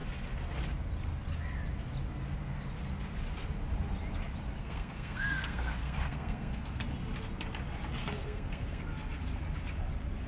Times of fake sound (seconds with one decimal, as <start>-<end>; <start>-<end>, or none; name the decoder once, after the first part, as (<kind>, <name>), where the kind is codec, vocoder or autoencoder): 4.6-6.8 (codec, SNAC); 8.0-8.8